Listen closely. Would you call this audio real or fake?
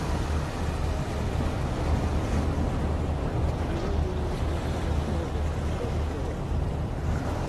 real